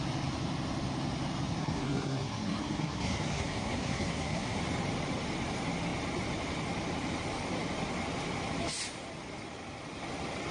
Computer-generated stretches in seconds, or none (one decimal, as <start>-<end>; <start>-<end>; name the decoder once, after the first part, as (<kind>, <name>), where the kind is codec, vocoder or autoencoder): 1.6-4.6 (codec, SNAC)